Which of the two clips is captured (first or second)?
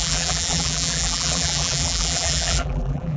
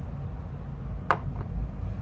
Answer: second